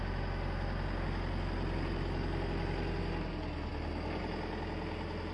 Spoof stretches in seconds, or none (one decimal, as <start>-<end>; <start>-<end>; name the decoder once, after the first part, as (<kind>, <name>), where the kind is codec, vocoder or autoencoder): none